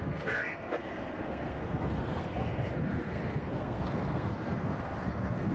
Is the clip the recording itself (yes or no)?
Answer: no